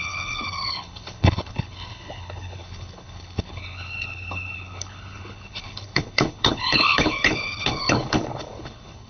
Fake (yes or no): yes